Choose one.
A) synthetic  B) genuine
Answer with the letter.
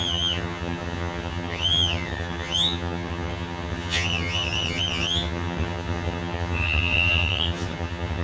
A